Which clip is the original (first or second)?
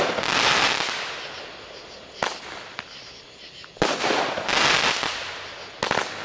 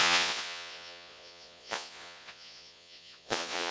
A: first